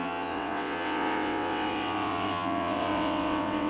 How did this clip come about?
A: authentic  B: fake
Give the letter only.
B